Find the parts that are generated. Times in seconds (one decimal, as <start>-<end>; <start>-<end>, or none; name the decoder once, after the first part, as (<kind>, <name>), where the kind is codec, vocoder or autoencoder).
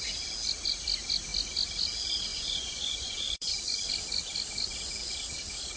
2.3-3.5 (vocoder, Vocos)